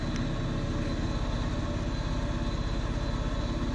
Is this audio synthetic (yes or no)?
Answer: no